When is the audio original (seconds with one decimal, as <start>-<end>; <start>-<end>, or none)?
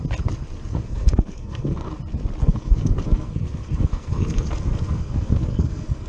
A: 0.0-0.7; 1.9-2.4